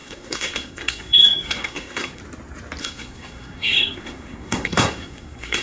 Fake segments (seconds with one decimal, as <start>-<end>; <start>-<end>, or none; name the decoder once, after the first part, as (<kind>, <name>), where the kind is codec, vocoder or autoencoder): 0.0-2.2 (codec, SNAC); 2.8-5.6